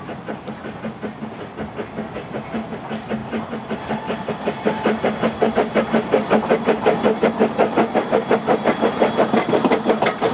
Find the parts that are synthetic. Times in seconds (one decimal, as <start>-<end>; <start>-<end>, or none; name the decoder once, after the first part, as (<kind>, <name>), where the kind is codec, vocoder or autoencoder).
none